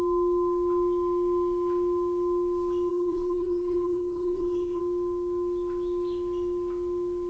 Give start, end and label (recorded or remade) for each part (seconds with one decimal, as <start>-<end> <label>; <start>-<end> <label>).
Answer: 0.0-2.9 recorded; 2.9-4.8 remade; 4.8-7.3 recorded